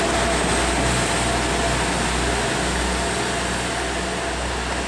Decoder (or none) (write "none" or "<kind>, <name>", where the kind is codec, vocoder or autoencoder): none